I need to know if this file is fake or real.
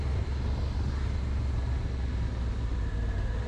real